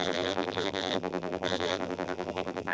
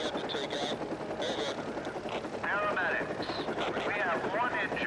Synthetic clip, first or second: first